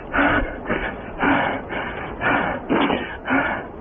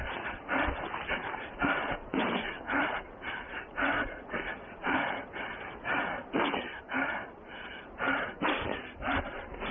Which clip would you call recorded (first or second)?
first